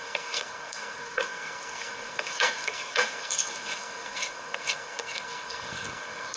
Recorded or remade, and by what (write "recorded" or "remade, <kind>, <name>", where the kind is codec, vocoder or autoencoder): remade, codec, SNAC